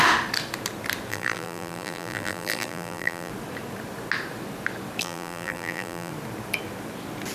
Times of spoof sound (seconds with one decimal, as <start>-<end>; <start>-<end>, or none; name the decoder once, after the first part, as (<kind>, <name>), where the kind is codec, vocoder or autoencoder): 1.1-3.3 (vocoder, BigVGAN v2); 5.0-6.1

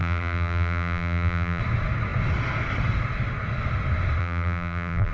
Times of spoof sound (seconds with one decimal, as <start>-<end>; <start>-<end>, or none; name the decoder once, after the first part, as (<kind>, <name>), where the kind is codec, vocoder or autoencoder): 0.0-1.6 (vocoder, BigVGAN v2); 4.2-5.1

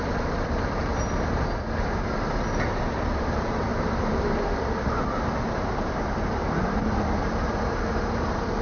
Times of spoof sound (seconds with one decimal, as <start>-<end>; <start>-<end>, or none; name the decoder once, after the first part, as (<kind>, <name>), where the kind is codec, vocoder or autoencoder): 0.0-0.9 (vocoder, BigVGAN v2); 2.8-8.6

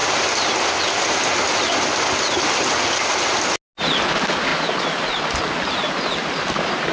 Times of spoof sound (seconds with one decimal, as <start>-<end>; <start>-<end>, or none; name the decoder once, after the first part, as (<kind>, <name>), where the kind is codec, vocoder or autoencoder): none

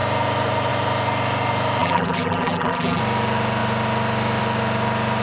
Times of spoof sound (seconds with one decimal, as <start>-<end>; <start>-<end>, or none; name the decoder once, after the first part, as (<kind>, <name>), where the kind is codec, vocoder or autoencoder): 1.8-3.0 (vocoder, BigVGAN v2)

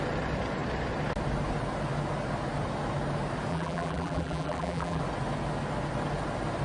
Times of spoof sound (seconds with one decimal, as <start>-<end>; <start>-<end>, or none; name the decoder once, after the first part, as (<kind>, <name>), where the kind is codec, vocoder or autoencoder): 3.5-5.0 (vocoder, BigVGAN v2)

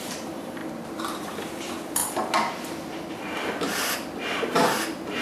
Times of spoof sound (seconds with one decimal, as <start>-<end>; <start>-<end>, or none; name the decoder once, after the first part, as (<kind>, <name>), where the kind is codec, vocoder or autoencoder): 0.0-0.6 (vocoder, BigVGAN v2); 1.2-2.0; 4.8-5.2